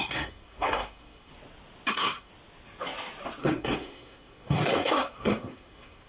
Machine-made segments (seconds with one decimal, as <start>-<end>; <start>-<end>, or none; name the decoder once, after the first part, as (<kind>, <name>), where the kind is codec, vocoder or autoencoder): 0.0-1.3 (codec, SNAC); 1.9-2.3; 3.4-6.1